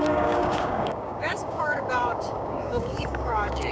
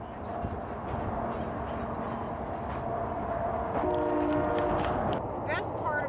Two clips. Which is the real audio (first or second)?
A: second